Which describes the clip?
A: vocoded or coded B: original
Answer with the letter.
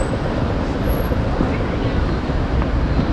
B